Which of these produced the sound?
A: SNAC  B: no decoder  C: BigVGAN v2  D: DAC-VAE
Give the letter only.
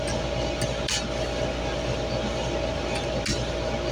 B